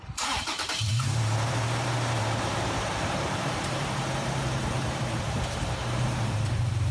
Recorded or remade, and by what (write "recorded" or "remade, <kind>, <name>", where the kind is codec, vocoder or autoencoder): remade, vocoder, BigVGAN v2